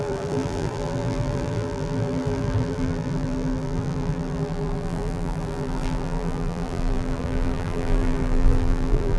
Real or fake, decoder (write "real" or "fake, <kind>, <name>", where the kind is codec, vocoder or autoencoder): fake, vocoder, BigVGAN v2